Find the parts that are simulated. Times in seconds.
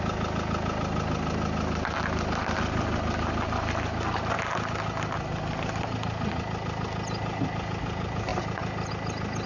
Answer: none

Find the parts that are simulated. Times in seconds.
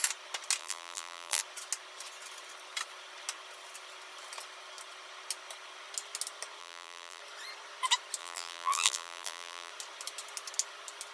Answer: 0.6-1.4 (vocoder, BigVGAN v2); 6.6-7.2; 8.2-9.7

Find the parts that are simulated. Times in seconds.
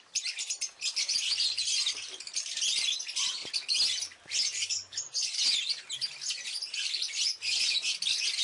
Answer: none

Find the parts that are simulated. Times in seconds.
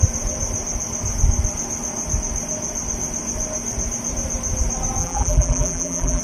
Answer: 5.0-6.2 (vocoder, BigVGAN v2)